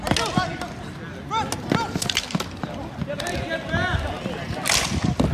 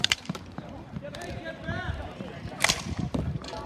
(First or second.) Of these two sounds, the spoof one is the second